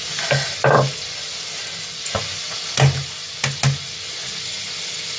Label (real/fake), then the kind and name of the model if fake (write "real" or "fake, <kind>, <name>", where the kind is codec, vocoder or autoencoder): real